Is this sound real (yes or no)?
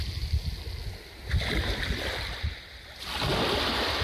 yes